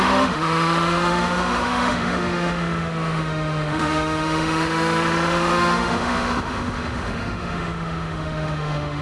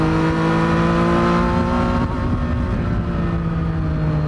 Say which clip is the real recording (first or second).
second